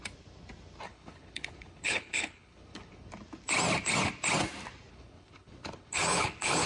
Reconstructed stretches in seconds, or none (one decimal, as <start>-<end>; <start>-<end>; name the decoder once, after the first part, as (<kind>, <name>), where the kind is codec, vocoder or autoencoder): 0.9-3.1 (codec, HILCodec); 4.9-6.7